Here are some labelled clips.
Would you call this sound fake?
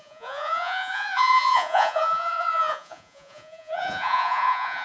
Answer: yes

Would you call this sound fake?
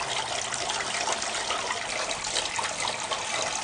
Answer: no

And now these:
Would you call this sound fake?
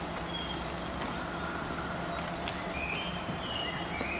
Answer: no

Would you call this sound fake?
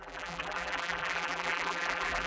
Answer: yes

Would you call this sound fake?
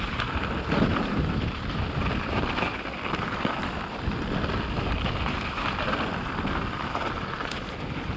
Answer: no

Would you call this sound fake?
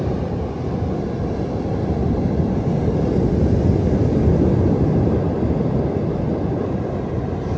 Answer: yes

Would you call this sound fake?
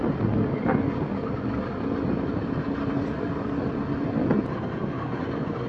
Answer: no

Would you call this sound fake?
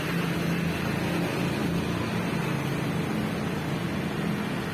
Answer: no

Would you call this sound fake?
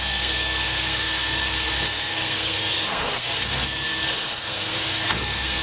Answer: yes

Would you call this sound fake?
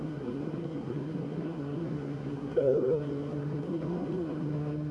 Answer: yes